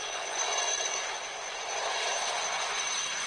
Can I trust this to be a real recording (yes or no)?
no